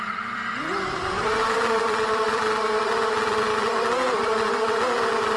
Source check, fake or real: fake